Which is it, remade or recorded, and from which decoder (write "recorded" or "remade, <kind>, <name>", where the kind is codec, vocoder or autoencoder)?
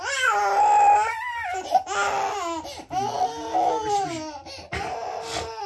recorded